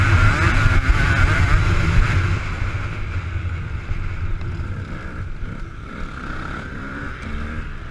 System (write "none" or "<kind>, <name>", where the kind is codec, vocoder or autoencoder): none